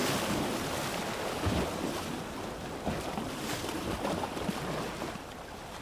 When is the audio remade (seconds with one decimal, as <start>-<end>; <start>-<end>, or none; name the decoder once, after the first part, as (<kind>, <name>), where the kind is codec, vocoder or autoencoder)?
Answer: none